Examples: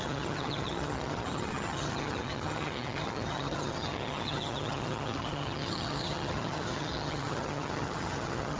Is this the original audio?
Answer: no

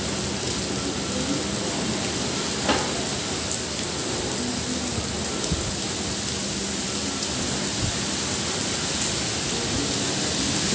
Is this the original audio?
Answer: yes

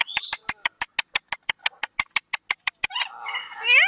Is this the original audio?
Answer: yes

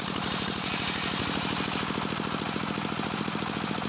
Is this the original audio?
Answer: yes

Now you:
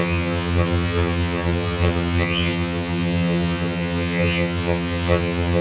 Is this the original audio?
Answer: no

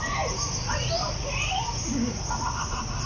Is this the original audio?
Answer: yes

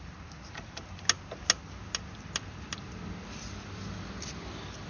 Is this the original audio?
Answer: yes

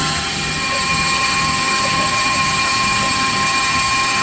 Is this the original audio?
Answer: no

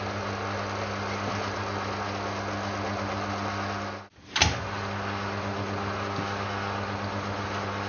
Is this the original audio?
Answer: yes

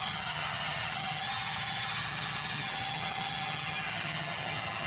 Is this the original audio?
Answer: no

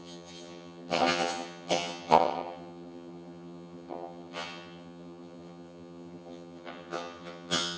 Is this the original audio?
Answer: no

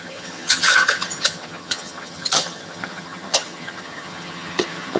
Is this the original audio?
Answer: no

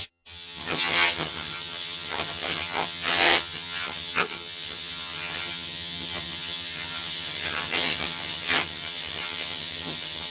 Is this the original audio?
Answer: no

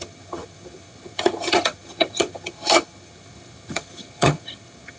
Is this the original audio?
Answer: no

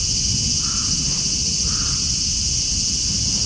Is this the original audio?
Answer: yes